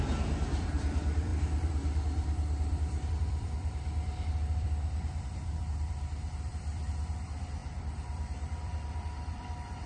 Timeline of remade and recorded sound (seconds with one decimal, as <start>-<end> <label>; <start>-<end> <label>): 0.0-9.9 remade